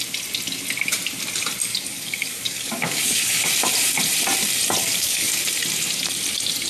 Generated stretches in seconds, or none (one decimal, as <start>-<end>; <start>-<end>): 1.7-3.5; 4.8-5.4